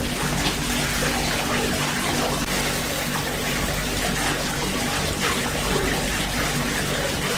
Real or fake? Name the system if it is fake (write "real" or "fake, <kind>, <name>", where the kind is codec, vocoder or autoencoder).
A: real